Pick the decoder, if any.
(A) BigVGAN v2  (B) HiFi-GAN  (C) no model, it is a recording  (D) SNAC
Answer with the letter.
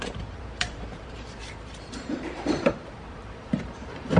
A